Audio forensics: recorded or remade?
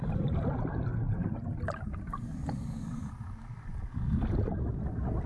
recorded